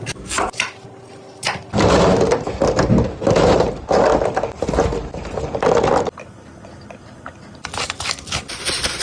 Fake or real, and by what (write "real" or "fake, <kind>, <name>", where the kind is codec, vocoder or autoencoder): real